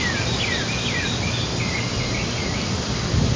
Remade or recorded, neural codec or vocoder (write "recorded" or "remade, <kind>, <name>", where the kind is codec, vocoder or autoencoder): recorded